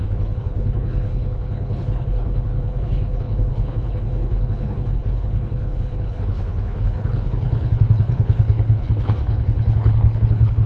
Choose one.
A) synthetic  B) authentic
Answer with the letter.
A